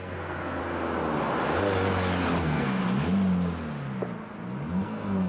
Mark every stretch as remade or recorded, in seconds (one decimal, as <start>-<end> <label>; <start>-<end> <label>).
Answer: 0.0-0.6 remade; 0.6-2.4 recorded; 2.4-2.8 remade; 2.8-4.7 recorded; 4.7-5.3 remade